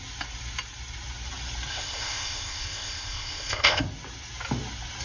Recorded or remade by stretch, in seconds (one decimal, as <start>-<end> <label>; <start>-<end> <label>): 0.0-1.7 recorded; 1.7-3.8 remade; 3.8-5.0 recorded